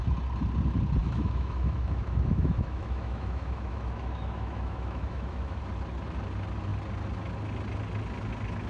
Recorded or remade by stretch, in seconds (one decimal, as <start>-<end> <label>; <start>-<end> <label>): 0.0-1.0 recorded; 1.0-5.6 remade; 5.6-8.7 recorded